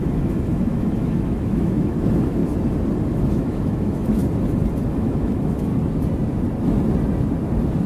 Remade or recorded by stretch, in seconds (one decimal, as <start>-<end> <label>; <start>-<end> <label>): 0.0-2.4 remade; 2.4-3.1 recorded; 3.1-4.2 remade; 4.2-4.9 recorded; 4.9-5.7 remade; 5.7-7.9 recorded